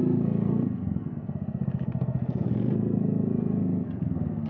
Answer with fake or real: fake